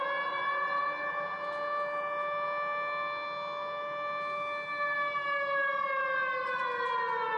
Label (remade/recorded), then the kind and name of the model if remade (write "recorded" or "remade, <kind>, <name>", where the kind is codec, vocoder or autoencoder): recorded